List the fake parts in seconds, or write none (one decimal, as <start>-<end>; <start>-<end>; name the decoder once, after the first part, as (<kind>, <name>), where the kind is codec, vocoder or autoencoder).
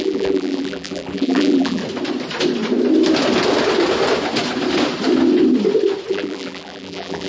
0.0-1.8 (vocoder, BigVGAN v2); 6.1-7.3